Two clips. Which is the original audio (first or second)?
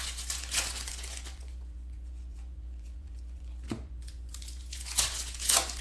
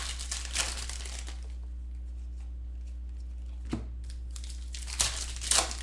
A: second